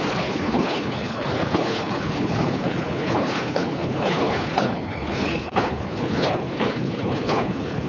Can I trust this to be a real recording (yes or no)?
no